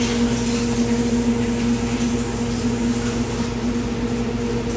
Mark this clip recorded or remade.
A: recorded